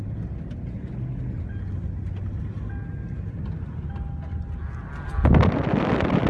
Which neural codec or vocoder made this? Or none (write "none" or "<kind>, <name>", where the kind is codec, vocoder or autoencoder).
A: none